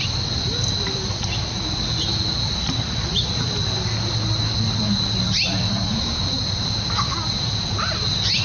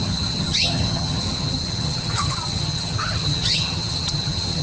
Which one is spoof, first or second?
second